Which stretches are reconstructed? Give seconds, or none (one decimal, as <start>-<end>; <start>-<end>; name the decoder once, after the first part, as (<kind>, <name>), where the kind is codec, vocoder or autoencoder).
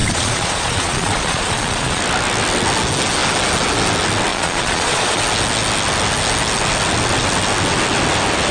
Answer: 0.0-2.0 (vocoder, Vocos); 4.3-5.2